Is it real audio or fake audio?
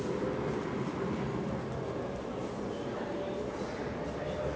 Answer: real